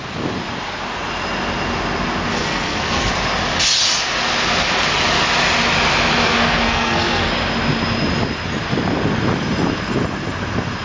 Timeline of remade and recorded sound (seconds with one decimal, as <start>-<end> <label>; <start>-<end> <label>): 0.0-2.3 recorded; 2.3-3.1 remade; 3.1-6.2 recorded; 6.2-7.3 remade; 7.3-10.8 recorded